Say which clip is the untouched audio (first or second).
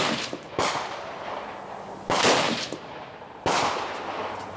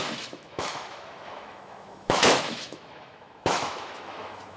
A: first